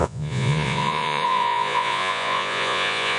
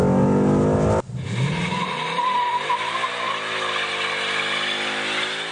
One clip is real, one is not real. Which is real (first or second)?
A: second